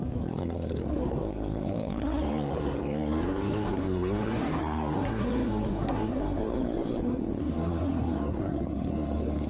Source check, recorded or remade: remade